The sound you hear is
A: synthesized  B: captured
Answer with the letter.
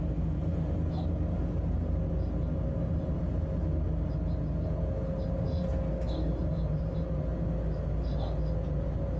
B